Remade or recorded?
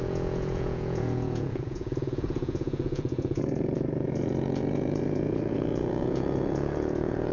remade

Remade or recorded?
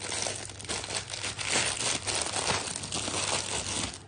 recorded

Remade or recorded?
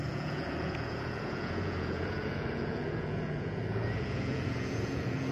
remade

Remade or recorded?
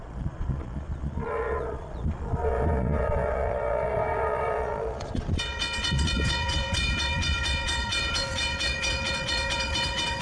remade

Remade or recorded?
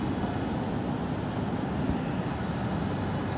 recorded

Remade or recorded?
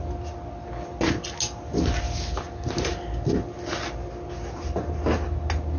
recorded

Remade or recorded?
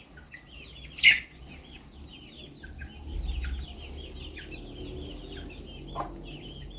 recorded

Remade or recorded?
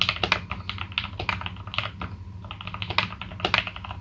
recorded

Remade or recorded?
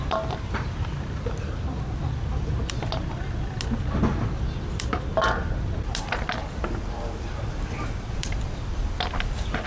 recorded